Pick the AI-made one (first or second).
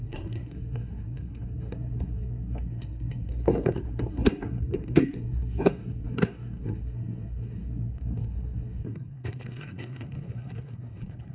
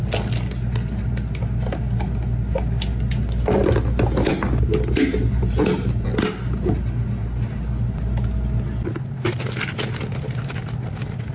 first